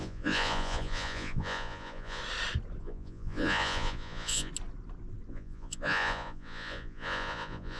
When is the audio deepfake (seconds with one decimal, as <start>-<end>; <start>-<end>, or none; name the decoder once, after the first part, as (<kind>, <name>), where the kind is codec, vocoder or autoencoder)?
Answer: 0.0-2.2 (vocoder, Vocos); 2.8-4.5; 5.3-7.8